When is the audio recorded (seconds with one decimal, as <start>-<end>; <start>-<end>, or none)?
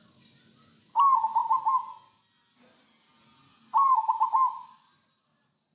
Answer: 0.0-5.7